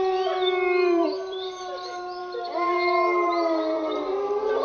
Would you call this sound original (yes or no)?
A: no